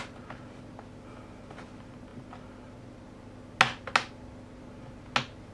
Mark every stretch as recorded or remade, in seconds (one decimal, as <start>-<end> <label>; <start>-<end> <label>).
0.0-5.5 recorded